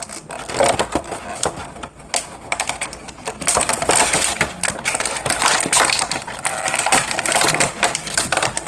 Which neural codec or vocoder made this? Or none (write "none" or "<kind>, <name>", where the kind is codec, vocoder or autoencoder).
none